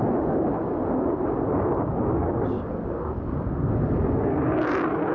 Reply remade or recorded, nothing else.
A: recorded